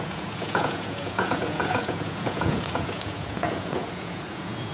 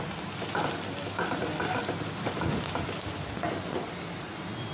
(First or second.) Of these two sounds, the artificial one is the first